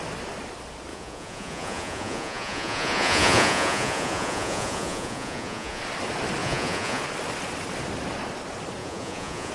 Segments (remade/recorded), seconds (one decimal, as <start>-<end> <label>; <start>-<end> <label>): 0.0-0.9 recorded; 0.9-5.8 remade; 5.8-6.4 recorded; 6.4-7.0 remade; 7.0-8.8 recorded; 8.8-9.5 remade